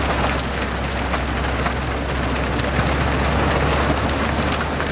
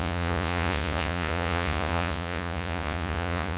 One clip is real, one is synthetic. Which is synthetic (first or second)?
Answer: second